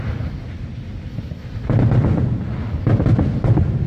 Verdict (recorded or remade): recorded